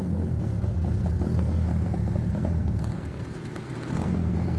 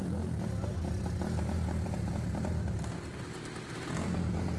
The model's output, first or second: first